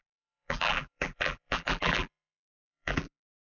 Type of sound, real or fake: fake